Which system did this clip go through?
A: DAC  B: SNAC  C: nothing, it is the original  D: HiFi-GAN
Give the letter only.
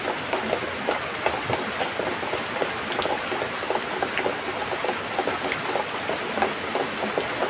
C